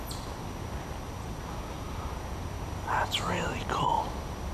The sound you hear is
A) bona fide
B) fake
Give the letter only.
A